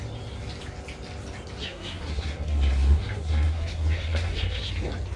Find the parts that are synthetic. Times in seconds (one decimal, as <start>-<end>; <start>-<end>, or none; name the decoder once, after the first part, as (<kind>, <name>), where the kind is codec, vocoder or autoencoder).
1.6-4.7 (codec, SNAC)